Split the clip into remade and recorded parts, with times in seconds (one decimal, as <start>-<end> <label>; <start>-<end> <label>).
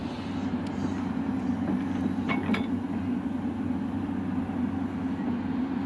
0.0-5.9 recorded